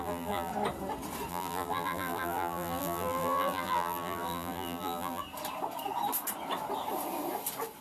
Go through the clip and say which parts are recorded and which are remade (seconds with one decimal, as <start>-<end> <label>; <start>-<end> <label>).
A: 0.0-0.5 remade; 0.5-1.3 recorded; 1.3-5.2 remade; 5.2-7.8 recorded